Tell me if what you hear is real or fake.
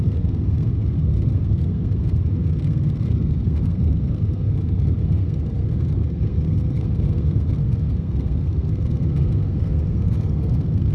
fake